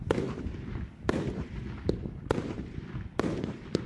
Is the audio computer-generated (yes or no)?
no